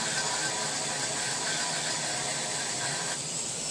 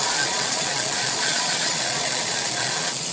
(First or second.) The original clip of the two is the first